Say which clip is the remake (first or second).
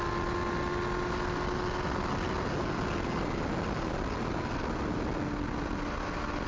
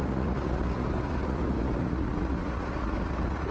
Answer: second